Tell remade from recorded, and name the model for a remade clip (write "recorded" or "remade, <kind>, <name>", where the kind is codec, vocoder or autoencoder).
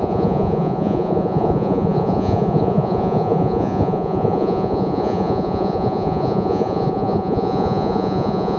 remade, vocoder, Vocos